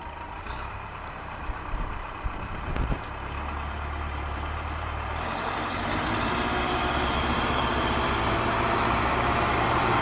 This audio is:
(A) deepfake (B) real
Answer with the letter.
A